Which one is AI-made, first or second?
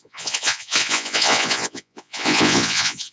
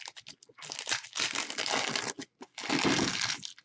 first